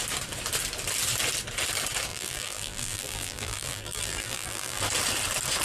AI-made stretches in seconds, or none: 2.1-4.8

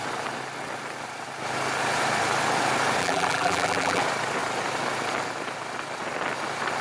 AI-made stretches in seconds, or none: 3.0-4.0

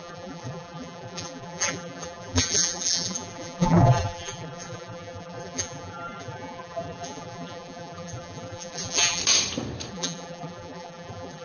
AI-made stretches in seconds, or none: 0.0-9.2; 9.9-11.4

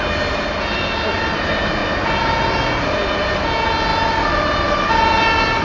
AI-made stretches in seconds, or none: none